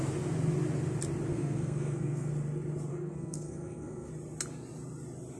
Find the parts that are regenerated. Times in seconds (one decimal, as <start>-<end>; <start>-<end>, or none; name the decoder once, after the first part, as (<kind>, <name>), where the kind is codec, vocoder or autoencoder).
1.3-2.3 (codec, SNAC); 2.9-4.1